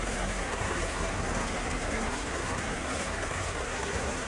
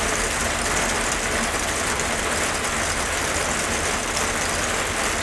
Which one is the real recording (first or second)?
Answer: second